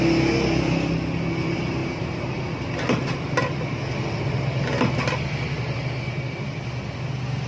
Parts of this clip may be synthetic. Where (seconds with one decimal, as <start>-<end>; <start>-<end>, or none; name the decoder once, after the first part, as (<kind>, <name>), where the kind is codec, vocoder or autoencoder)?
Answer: 1.8-2.4 (vocoder, BigVGAN v2)